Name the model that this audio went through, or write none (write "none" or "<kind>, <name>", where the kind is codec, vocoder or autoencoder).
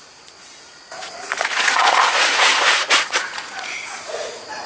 vocoder, Vocos